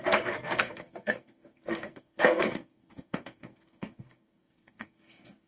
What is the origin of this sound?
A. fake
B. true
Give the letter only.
A